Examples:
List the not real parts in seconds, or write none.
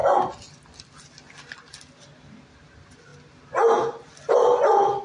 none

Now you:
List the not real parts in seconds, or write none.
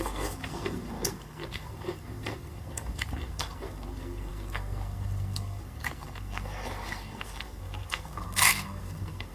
0.0-9.3 (codec, SNAC)